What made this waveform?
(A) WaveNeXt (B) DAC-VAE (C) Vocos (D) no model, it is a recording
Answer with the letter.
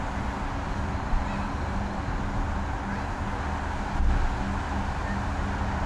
D